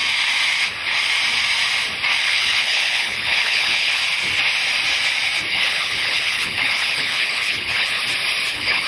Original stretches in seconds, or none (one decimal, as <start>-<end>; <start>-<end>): 0.0-2.2; 4.0-5.5; 8.0-8.5